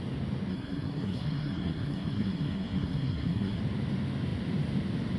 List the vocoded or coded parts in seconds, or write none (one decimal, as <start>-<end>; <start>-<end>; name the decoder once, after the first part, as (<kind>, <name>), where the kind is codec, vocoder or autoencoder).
0.5-3.6 (codec, SNAC)